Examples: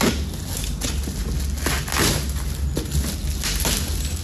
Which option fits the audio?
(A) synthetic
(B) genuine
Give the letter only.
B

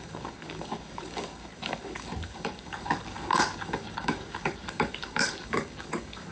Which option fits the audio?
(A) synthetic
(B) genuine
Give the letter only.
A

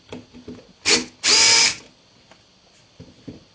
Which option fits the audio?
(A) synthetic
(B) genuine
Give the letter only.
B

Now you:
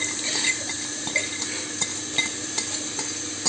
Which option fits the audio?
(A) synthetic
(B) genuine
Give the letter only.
B